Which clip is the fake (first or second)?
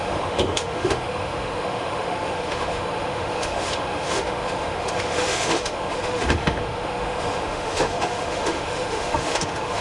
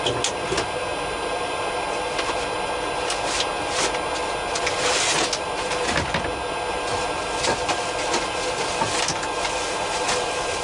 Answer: first